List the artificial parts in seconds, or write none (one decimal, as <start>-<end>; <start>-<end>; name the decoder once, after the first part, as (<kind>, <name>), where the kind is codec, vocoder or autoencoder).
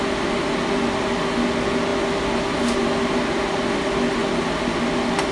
none